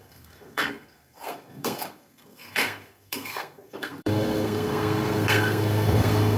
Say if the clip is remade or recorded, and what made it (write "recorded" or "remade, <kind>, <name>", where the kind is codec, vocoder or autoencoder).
remade, codec, SNAC